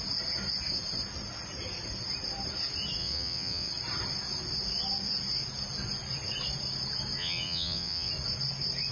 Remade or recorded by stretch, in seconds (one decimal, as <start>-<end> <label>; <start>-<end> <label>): 0.0-3.0 recorded; 3.0-3.7 remade; 3.7-7.2 recorded; 7.2-8.1 remade; 8.1-8.9 recorded